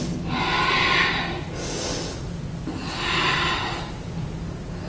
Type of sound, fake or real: real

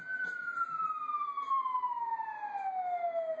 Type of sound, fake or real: real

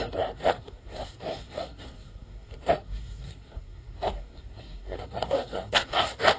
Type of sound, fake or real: fake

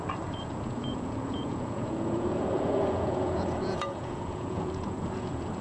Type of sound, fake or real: fake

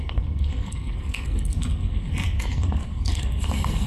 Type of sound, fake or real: fake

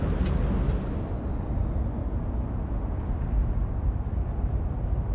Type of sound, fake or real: real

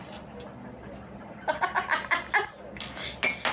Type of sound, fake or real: real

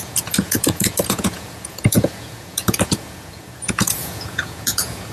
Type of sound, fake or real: fake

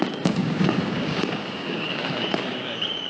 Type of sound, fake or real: fake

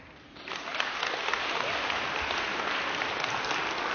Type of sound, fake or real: real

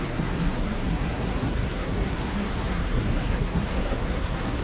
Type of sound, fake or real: fake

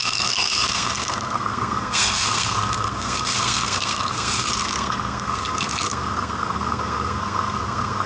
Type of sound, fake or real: fake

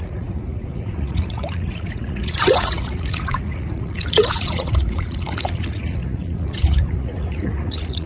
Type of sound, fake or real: fake